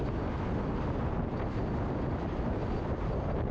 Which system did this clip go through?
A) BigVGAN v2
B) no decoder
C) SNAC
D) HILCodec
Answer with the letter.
B